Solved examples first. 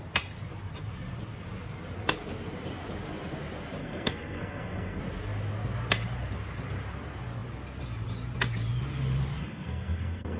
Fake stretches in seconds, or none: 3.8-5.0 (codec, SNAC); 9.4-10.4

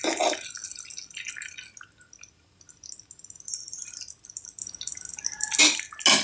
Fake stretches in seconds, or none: none

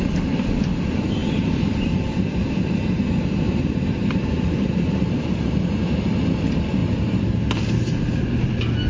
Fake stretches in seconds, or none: 1.2-4.7 (vocoder, BigVGAN v2)

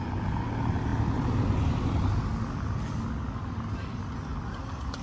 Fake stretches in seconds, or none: none

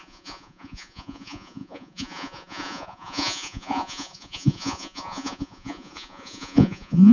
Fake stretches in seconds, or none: 0.0-7.1 (vocoder, Vocos)

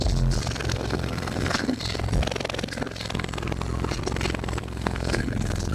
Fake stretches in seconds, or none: 0.7-1.8 (codec, SNAC); 4.6-5.7

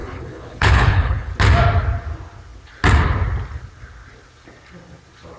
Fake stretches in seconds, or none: 0.0-1.3 (codec, HILCodec)

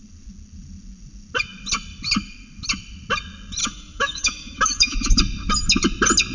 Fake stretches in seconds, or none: 3.6-5.2 (autoencoder, DAC-VAE)